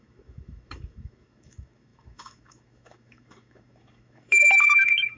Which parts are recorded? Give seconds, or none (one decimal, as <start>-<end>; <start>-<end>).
none